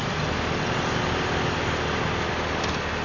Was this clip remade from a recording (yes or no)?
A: no